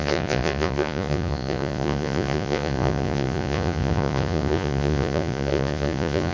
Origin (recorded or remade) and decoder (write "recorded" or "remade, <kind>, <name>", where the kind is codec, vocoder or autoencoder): remade, vocoder, Vocos